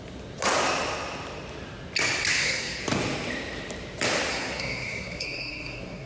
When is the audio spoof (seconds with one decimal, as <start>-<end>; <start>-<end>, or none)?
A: 2.3-2.8; 4.3-6.1